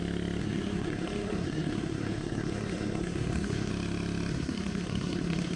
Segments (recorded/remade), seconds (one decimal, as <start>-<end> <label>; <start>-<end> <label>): 0.0-0.4 recorded; 0.4-3.7 remade; 3.7-4.3 recorded; 4.3-5.6 remade